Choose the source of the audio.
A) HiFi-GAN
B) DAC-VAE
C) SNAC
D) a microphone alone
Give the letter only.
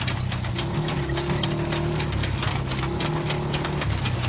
D